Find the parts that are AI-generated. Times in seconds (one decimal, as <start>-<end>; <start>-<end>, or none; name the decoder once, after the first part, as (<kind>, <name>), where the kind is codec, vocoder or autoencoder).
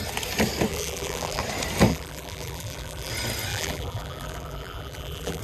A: 0.7-1.4 (vocoder, BigVGAN v2); 1.9-3.1; 3.5-5.4